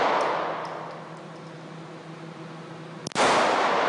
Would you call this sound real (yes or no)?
yes